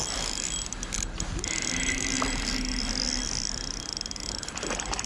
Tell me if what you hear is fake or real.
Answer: real